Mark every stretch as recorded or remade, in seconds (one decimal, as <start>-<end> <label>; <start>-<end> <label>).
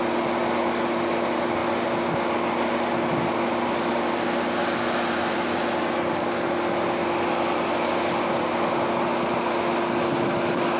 0.0-10.8 recorded